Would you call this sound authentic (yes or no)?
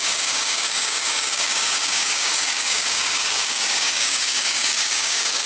no